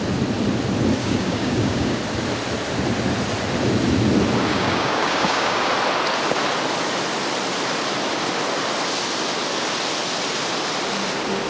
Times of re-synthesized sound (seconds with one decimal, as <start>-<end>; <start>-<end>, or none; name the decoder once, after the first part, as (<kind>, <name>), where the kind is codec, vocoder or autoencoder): 1.0-2.0 (codec, DAC); 4.5-5.7